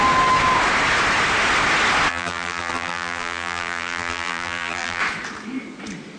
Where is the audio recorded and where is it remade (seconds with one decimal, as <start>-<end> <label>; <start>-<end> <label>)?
0.0-2.1 recorded; 2.1-5.0 remade; 5.0-6.2 recorded